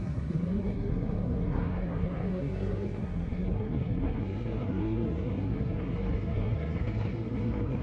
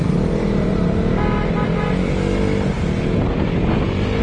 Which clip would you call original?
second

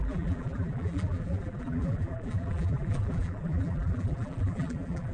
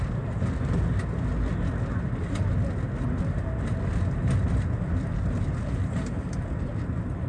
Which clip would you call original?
second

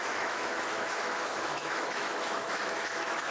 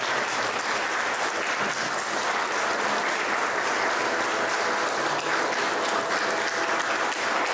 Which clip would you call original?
second